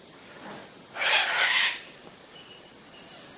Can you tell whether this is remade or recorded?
recorded